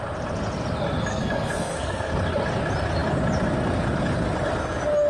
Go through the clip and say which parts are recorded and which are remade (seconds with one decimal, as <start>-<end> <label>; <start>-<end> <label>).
0.0-1.1 recorded; 1.1-2.1 remade; 2.1-5.1 recorded